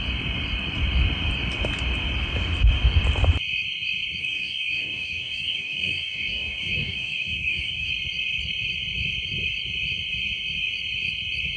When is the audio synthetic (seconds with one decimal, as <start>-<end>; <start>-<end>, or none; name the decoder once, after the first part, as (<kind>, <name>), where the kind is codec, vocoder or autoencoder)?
4.2-7.9 (codec, DAC)

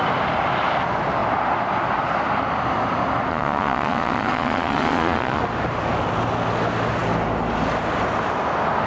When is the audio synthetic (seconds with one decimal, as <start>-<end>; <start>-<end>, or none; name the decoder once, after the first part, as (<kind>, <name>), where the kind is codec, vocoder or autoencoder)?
3.3-5.4 (vocoder, Vocos)

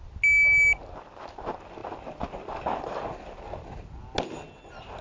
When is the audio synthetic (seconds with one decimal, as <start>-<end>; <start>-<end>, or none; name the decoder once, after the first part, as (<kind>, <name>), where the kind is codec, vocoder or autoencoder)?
none

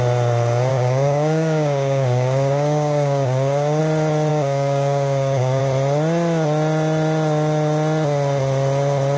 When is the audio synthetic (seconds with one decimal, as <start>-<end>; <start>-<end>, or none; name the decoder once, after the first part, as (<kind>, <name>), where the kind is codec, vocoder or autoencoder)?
0.7-3.8 (codec, DAC); 4.3-5.6

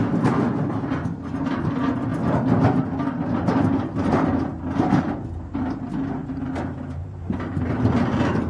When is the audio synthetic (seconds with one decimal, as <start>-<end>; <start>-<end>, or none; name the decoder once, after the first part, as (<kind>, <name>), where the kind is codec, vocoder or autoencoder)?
6.2-7.9 (vocoder, BigVGAN v2)

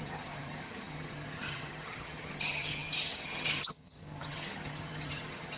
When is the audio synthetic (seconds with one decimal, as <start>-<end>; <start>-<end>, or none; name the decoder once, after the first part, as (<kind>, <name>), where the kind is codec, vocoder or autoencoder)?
0.0-5.6 (vocoder, HiFi-GAN)